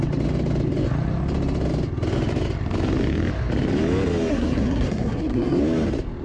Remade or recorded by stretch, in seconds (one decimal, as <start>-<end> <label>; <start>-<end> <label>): 0.0-4.3 recorded; 4.3-5.6 remade; 5.6-6.2 recorded